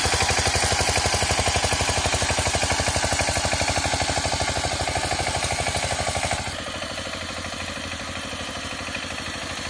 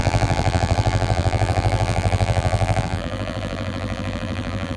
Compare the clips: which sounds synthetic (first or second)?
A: second